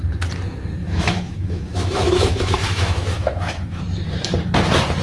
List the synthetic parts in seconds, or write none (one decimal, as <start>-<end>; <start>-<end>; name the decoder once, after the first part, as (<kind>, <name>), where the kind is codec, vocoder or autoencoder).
0.8-3.8 (autoencoder, DAC-VAE)